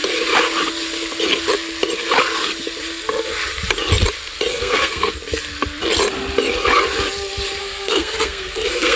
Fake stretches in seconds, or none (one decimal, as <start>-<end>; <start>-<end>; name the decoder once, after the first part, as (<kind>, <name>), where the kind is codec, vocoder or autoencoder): 4.5-5.1 (codec, SNAC); 7.6-9.0

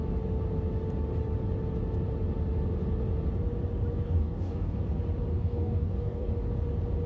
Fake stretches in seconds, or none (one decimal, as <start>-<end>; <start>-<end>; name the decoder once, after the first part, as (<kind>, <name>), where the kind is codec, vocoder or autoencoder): 3.9-4.8 (codec, DAC); 5.3-6.3

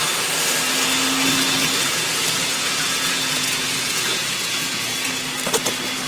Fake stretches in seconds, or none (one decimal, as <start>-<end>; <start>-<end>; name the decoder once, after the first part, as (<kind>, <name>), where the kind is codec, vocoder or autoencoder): 1.8-5.1 (vocoder, Vocos)

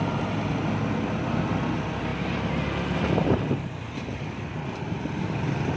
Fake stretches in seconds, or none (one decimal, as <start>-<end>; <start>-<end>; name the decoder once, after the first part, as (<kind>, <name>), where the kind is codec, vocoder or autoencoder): none